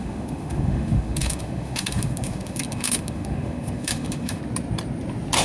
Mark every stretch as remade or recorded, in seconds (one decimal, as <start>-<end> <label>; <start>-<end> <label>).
0.0-4.4 remade; 4.4-5.4 recorded